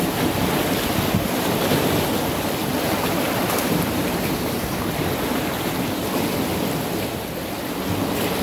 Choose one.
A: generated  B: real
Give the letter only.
B